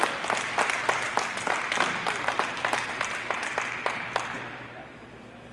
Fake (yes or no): no